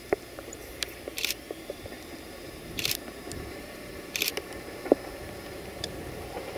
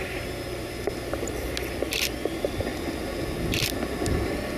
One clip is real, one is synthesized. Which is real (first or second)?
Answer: second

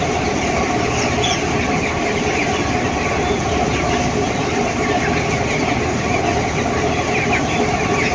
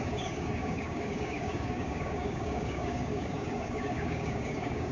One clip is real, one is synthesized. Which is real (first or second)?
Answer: first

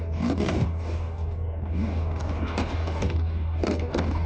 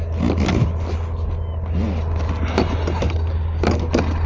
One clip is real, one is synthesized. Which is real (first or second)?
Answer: second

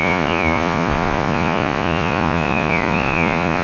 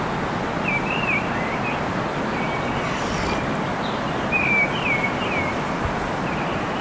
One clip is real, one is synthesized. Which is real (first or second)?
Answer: second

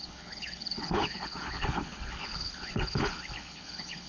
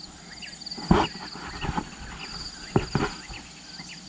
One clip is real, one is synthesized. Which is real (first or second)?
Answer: second